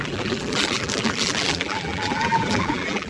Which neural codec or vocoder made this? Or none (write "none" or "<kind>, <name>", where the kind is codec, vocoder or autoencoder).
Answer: vocoder, BigVGAN v2